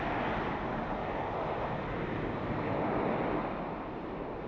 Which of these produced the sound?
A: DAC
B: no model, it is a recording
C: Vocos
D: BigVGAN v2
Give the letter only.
B